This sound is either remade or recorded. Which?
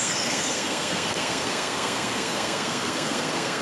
remade